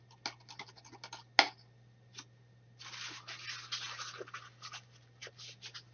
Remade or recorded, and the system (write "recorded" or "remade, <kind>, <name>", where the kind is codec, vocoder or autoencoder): recorded